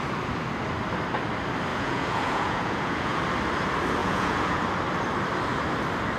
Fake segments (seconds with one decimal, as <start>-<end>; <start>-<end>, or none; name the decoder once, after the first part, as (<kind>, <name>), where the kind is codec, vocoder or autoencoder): 1.7-3.2 (vocoder, Vocos); 4.0-4.6